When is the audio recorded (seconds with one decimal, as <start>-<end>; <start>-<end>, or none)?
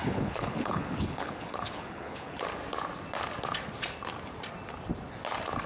2.4-5.7